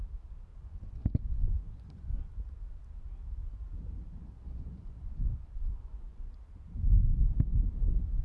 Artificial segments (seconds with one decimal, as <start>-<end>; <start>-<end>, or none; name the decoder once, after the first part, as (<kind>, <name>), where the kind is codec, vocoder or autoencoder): 0.5-2.4 (vocoder, Vocos); 4.2-6.3